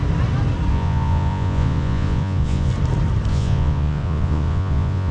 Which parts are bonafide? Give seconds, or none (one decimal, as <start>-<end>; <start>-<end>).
0.0-0.7; 2.7-3.3